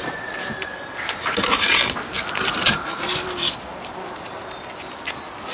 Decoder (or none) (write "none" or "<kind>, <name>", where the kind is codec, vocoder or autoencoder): none